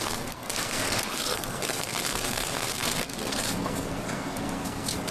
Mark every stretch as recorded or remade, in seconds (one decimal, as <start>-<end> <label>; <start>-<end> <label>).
0.0-5.1 remade